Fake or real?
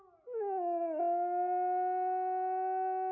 real